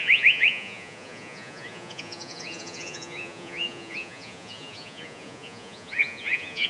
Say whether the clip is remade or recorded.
remade